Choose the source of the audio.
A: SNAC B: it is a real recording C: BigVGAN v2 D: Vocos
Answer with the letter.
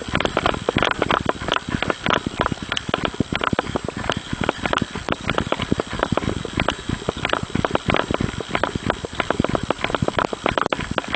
B